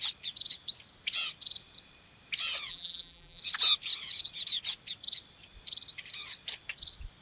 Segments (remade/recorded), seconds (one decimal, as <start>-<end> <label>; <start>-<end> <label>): 0.0-2.7 recorded; 2.7-3.4 remade; 3.4-7.2 recorded